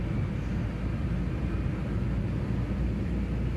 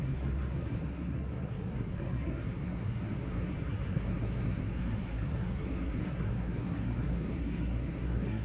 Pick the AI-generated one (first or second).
second